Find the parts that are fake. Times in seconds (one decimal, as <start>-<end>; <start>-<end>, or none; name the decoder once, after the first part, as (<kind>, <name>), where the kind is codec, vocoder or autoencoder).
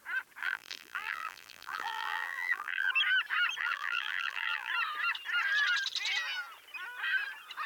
0.4-2.9 (vocoder, BigVGAN v2); 3.6-4.7